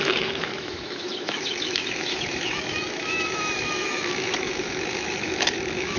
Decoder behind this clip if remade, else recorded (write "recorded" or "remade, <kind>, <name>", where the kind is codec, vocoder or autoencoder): remade, autoencoder, DAC-VAE